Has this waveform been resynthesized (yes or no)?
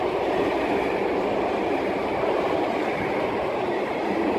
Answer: yes